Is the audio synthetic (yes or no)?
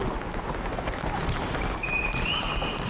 no